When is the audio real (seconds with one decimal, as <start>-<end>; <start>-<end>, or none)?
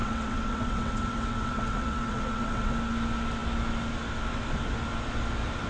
2.7-5.7